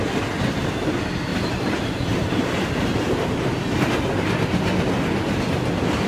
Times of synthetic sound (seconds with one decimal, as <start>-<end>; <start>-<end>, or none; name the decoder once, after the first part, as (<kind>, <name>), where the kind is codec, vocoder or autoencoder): 1.3-2.7 (vocoder, BigVGAN v2)